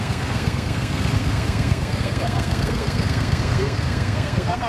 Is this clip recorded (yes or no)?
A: no